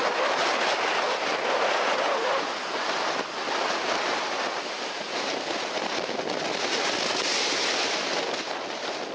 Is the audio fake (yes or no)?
no